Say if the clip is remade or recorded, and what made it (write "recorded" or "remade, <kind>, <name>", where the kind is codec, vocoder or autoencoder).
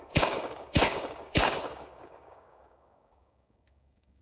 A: remade, codec, DAC